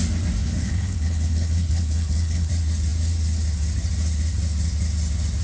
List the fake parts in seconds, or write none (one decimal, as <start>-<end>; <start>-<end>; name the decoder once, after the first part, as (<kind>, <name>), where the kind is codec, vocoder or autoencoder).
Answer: 0.4-2.5 (codec, HILCodec)